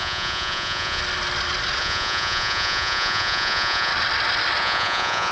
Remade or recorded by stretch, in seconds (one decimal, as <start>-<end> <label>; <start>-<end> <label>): 0.0-1.0 remade; 1.0-1.8 recorded; 1.8-3.9 remade; 3.9-4.6 recorded; 4.6-5.3 remade